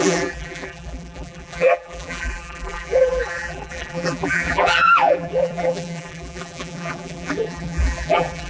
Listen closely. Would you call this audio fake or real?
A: fake